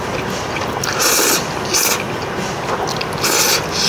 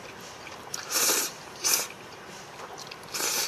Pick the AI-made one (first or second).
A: second